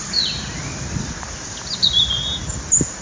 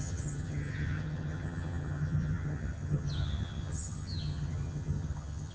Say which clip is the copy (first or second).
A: second